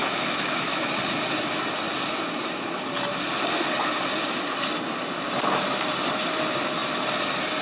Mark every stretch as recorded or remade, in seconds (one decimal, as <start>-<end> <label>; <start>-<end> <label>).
0.0-0.8 remade; 0.8-7.6 recorded